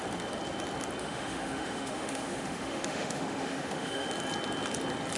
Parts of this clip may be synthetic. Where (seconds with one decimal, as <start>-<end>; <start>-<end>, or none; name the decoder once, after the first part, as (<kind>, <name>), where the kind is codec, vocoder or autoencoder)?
1.0-4.1 (autoencoder, DAC-VAE)